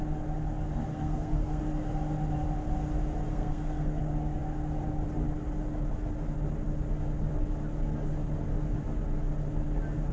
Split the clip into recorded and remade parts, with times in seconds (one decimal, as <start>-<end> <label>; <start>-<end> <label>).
0.0-0.9 recorded; 0.9-1.6 remade; 1.6-3.3 recorded; 3.3-4.0 remade; 4.0-10.1 recorded